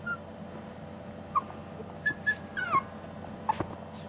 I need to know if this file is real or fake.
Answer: real